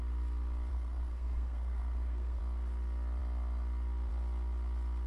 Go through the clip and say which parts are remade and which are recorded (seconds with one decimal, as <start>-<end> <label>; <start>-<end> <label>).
0.0-0.7 recorded; 0.7-2.4 remade; 2.4-5.1 recorded